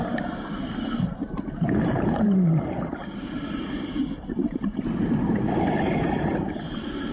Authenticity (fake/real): fake